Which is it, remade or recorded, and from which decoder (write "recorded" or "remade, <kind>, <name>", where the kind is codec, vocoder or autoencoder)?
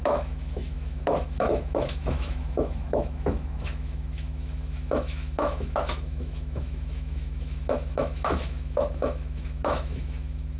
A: remade, autoencoder, DAC-VAE